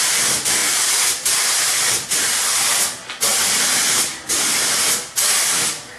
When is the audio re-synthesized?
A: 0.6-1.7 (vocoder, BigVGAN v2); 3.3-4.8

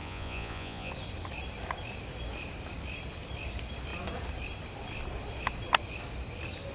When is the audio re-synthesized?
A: 0.0-0.9 (vocoder, Vocos)

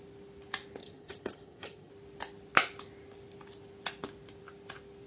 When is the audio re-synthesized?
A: 0.8-1.9 (vocoder, HiFi-GAN)